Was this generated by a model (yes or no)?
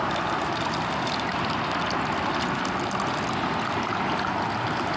no